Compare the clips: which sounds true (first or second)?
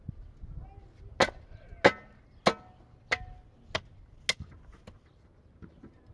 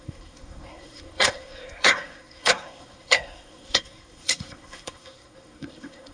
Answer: first